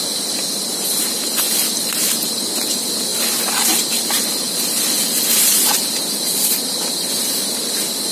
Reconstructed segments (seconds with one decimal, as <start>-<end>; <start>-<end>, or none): none